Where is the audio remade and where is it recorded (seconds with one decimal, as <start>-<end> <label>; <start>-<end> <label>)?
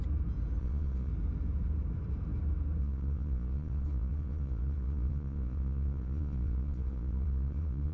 0.0-0.6 recorded; 0.6-1.1 remade; 1.1-2.8 recorded; 2.8-7.9 remade